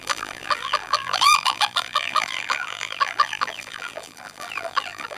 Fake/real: fake